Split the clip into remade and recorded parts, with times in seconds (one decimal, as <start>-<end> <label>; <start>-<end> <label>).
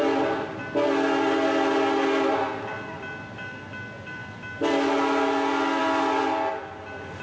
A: 0.0-7.2 recorded